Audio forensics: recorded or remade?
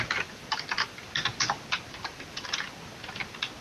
recorded